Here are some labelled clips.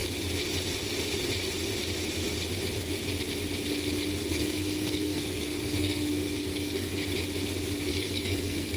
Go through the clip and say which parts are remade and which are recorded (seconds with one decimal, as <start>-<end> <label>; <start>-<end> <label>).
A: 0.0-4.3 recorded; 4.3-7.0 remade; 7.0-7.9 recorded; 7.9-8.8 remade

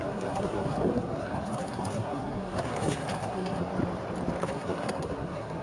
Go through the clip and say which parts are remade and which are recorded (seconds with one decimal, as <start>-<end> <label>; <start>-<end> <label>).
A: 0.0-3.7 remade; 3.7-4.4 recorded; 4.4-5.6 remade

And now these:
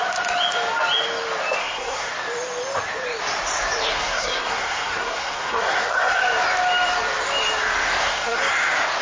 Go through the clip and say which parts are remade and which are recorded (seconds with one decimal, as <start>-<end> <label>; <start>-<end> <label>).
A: 0.0-1.6 recorded; 1.6-2.1 remade; 2.1-3.9 recorded; 3.9-6.2 remade; 6.2-8.0 recorded; 8.0-8.5 remade; 8.5-9.0 recorded

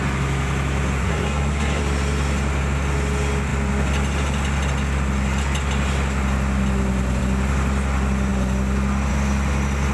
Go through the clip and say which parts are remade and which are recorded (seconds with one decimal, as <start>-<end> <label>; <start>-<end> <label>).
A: 0.0-1.0 recorded; 1.0-1.8 remade; 1.8-9.9 recorded

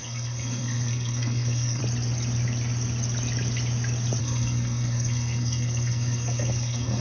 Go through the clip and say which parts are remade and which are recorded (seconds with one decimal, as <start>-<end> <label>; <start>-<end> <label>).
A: 0.0-1.8 remade; 1.8-4.2 recorded; 4.2-7.0 remade